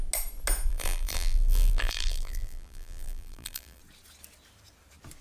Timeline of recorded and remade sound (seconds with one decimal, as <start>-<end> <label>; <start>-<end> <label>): 0.0-0.7 recorded; 0.7-3.8 remade; 3.8-5.2 recorded